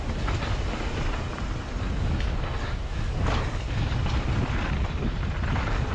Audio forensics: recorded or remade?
recorded